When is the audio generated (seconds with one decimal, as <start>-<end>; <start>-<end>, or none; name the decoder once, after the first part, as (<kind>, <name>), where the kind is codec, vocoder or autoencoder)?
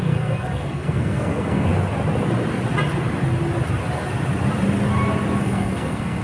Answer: 0.0-1.7 (codec, SNAC); 5.4-6.2